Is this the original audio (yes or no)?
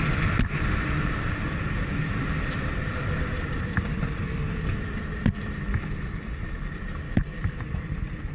no